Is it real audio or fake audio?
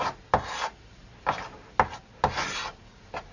real